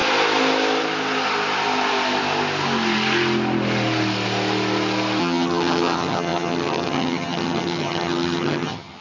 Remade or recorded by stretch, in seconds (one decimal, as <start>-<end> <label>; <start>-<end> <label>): 0.0-5.2 recorded; 5.2-9.0 remade